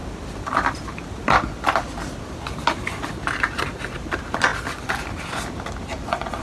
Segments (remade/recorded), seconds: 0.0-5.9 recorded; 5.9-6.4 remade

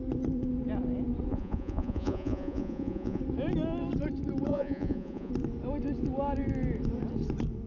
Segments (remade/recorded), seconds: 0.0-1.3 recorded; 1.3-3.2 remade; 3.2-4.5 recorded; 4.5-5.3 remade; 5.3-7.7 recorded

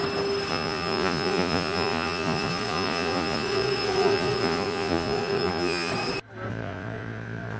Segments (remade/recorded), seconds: 0.0-0.5 recorded; 0.5-5.9 remade; 5.9-6.5 recorded; 6.5-7.6 remade

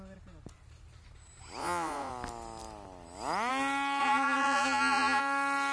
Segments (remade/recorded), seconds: 0.0-1.6 recorded; 1.6-2.1 remade; 2.1-4.0 recorded; 4.0-5.2 remade; 5.2-5.7 recorded

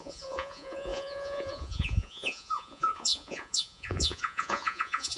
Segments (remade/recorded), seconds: 0.0-5.2 remade

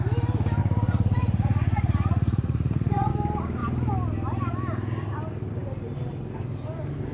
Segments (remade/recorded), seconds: 0.0-0.6 recorded; 0.6-3.1 remade; 3.1-7.1 recorded